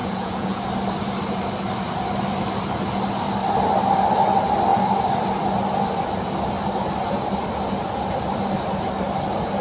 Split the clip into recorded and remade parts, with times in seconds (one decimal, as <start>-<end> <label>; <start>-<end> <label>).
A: 0.0-0.6 remade; 0.6-9.6 recorded